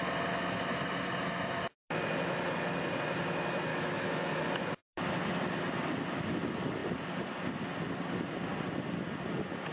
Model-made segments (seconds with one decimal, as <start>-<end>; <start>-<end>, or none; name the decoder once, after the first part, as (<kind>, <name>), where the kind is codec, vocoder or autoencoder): 3.7-4.5 (autoencoder, DAC-VAE)

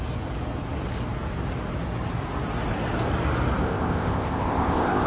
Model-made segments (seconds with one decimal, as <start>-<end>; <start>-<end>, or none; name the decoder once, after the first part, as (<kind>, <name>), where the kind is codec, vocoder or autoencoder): 3.6-5.1 (codec, ZipCodec)

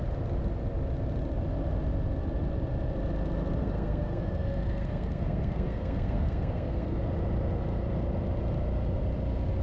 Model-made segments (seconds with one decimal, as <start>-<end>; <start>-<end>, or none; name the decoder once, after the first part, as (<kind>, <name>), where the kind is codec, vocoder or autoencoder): 3.6-7.0 (codec, SNAC)

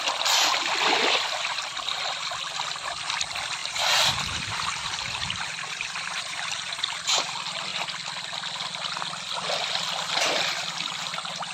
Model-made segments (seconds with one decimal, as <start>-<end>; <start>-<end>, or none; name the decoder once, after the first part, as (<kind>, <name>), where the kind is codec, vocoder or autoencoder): 3.6-7.2 (vocoder, BigVGAN v2)

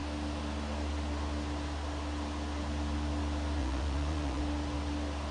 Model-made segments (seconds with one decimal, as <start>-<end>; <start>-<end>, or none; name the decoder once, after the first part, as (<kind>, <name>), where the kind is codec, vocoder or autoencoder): 3.6-4.4 (vocoder, Vocos)

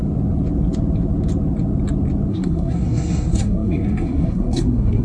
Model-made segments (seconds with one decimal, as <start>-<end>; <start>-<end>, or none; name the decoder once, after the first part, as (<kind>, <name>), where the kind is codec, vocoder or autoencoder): 2.3-5.0 (codec, SNAC)

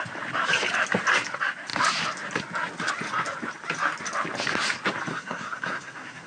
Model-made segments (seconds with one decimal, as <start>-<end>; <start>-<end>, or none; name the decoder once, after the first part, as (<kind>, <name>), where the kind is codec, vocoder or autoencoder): 5.1-6.3 (codec, SNAC)

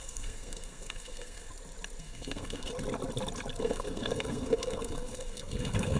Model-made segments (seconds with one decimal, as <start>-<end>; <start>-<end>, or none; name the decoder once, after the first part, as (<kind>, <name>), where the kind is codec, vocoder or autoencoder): 0.0-1.5 (codec, SNAC); 2.0-2.7; 3.6-6.0